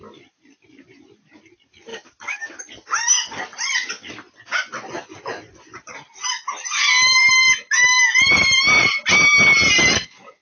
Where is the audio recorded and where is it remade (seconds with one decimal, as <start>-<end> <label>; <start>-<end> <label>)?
0.0-1.9 recorded; 1.9-2.6 remade; 2.6-10.4 recorded